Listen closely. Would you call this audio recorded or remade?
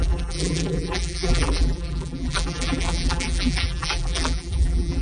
remade